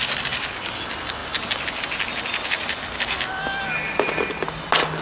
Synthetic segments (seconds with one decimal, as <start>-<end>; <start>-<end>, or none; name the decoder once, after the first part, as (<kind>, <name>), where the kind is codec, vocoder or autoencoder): none